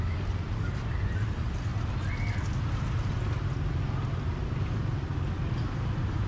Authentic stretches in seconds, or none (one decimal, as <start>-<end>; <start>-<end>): 1.7-5.5